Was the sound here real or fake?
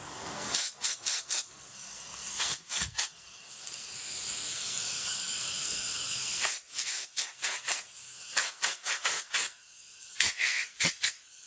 fake